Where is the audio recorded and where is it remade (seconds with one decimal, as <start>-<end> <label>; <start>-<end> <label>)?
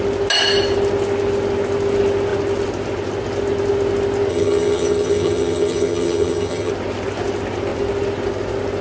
0.0-4.3 recorded; 4.3-6.7 remade; 6.7-8.8 recorded